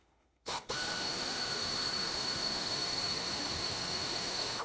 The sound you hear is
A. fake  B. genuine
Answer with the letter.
A